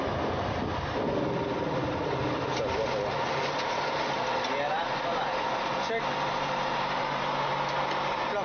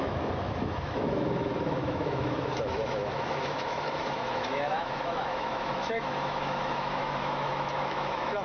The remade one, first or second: second